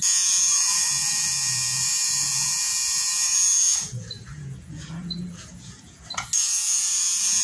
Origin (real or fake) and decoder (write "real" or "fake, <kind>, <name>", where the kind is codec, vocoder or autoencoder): fake, vocoder, Vocos